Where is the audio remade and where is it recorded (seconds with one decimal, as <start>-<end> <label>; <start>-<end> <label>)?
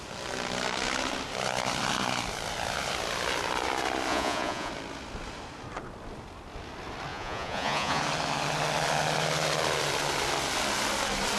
0.0-4.1 recorded; 4.1-4.7 remade; 4.7-7.1 recorded; 7.1-8.0 remade; 8.0-11.4 recorded